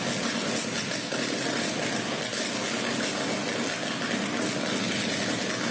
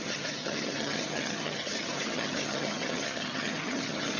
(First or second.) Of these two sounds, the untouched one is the first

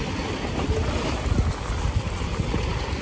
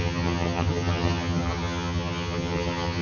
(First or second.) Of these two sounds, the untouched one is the first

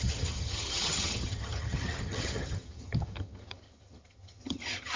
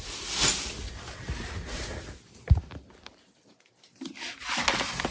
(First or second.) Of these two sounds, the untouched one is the second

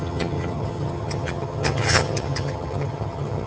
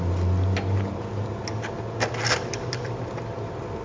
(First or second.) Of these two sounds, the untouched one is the second